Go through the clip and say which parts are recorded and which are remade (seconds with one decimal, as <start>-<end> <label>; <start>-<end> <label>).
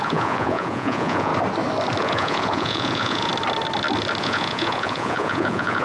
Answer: 0.0-1.3 remade; 1.3-2.0 recorded; 2.0-3.3 remade; 3.3-4.2 recorded; 4.2-5.8 remade